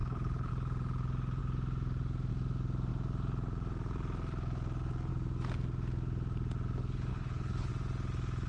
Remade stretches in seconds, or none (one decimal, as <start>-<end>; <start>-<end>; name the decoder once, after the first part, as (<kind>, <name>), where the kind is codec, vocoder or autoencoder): 0.0-0.5 (codec, HILCodec); 7.1-7.7